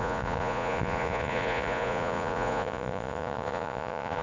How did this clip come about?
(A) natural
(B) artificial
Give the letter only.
B